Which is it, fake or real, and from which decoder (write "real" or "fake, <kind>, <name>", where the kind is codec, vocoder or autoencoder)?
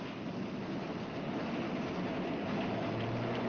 real